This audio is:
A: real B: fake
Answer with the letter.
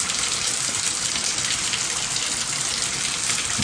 A